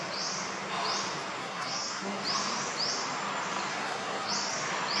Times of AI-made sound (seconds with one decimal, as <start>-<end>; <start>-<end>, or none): 1.4-2.2; 3.7-4.3